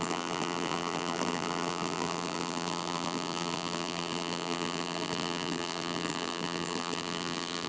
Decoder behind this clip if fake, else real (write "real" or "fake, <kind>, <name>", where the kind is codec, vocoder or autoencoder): fake, vocoder, BigVGAN v2